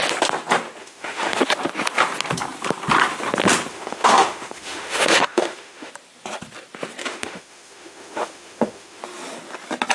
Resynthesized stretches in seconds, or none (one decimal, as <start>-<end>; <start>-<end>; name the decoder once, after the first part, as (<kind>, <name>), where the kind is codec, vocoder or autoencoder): 0.8-1.4 (autoencoder, DAC-VAE); 3.7-5.9; 7.0-9.0